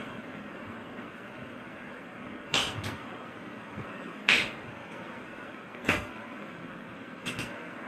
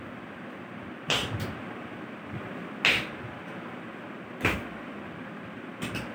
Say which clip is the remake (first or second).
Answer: first